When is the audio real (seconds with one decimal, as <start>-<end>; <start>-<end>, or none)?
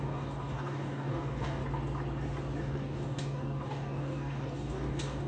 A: 1.6-2.6